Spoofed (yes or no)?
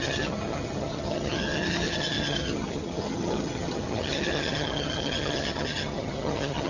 yes